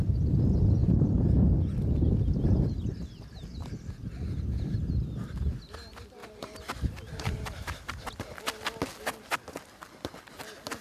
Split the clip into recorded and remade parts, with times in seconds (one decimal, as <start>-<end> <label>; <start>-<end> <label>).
0.0-0.8 recorded; 0.8-1.5 remade; 1.5-6.2 recorded; 6.2-8.1 remade; 8.1-10.8 recorded